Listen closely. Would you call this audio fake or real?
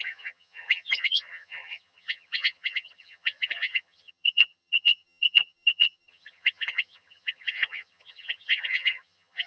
fake